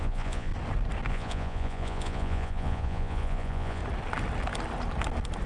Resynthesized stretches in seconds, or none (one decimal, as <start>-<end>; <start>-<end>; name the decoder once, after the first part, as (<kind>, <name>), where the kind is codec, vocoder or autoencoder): 0.0-0.5 (vocoder, Vocos); 1.1-3.8